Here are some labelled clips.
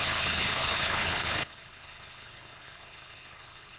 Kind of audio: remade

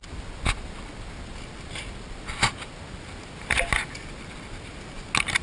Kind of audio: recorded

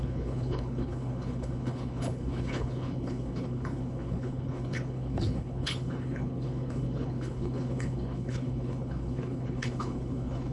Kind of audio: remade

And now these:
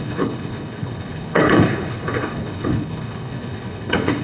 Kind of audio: remade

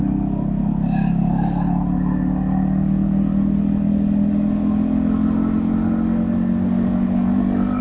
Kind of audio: recorded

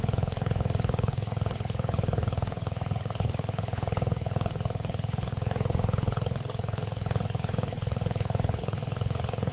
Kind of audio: remade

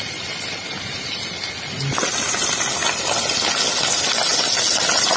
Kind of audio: recorded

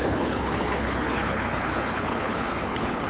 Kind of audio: remade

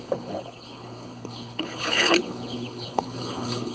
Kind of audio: remade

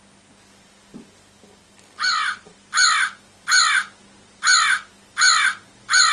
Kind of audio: recorded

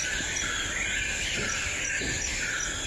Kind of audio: recorded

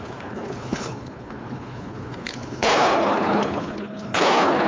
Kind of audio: remade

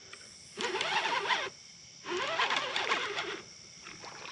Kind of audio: recorded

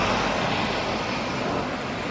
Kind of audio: recorded